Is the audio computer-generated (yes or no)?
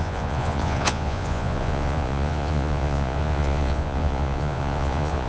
yes